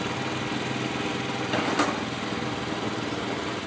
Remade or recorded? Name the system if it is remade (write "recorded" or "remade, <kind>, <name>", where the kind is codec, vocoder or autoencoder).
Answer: recorded